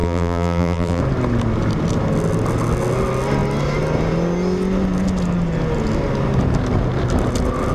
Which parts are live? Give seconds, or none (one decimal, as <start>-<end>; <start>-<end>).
1.0-7.7